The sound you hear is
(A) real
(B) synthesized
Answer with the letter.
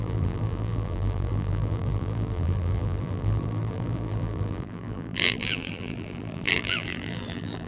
B